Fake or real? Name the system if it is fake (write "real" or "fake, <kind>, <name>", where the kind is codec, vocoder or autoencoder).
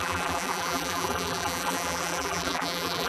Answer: fake, vocoder, BigVGAN v2